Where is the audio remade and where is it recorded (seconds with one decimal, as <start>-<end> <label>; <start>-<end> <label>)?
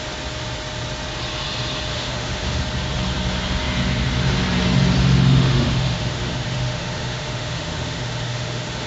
0.0-1.9 recorded; 1.9-2.6 remade; 2.6-5.0 recorded; 5.0-8.9 remade